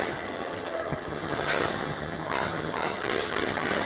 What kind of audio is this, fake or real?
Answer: fake